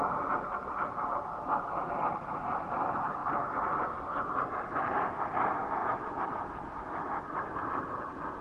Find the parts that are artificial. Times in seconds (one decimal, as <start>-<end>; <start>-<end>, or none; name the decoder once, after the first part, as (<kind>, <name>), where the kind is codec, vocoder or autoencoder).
5.8-7.2 (autoencoder, DAC-VAE)